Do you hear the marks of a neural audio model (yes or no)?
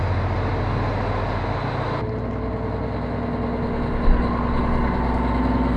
no